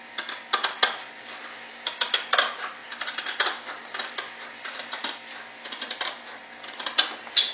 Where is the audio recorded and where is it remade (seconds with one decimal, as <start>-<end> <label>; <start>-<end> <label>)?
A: 0.0-2.8 recorded; 2.8-3.7 remade; 3.7-7.5 recorded